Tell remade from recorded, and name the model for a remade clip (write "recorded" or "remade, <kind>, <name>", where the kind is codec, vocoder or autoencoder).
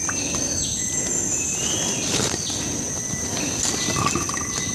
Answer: recorded